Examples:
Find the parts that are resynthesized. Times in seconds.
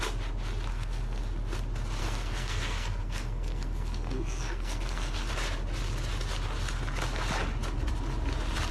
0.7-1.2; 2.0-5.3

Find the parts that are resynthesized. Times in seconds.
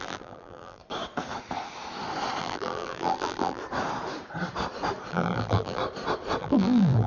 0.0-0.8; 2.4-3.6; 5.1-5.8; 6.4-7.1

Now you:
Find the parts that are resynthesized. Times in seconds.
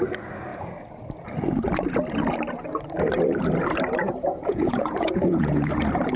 4.0-5.7